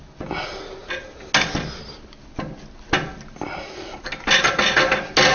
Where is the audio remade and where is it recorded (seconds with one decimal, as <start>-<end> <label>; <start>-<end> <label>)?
0.0-5.3 recorded